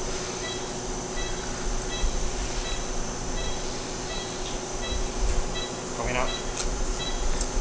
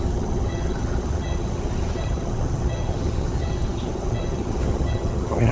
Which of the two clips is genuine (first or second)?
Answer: first